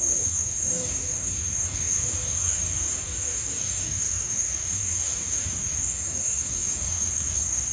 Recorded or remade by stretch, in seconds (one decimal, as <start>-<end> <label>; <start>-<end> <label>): 0.0-7.7 remade